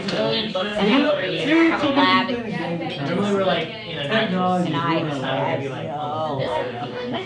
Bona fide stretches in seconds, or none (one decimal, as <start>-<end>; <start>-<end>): 2.0-6.4